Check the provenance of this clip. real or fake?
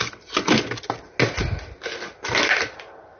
real